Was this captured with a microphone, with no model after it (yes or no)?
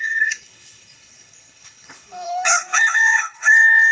no